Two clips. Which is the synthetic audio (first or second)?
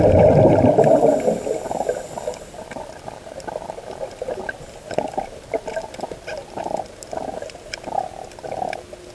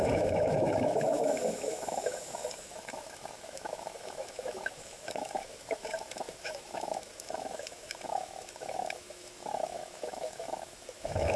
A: second